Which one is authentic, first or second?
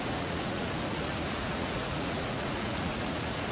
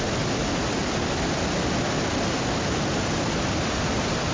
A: second